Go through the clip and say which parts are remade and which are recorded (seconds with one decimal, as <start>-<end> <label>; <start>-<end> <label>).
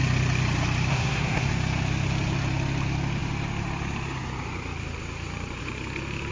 0.0-0.9 recorded; 0.9-1.5 remade; 1.5-6.3 recorded